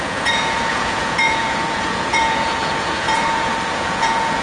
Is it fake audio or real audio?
fake